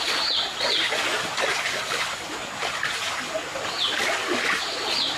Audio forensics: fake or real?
real